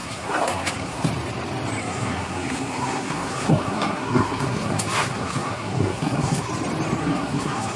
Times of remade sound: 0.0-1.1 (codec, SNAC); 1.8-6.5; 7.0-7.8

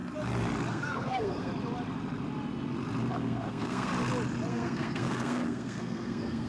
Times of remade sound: 0.7-1.5 (codec, SNAC); 3.1-3.9; 4.5-6.5